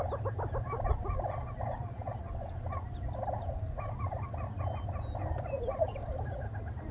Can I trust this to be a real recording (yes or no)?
yes